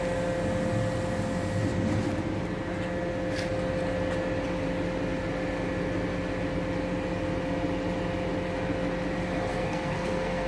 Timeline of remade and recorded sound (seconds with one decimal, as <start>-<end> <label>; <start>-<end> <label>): 0.0-9.5 recorded; 9.5-10.5 remade